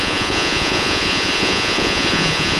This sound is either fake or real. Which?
fake